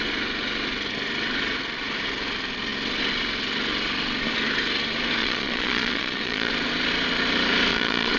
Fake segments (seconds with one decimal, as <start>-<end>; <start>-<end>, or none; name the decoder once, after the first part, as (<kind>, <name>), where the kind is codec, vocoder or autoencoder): 5.2-6.5 (vocoder, Vocos); 7.7-8.2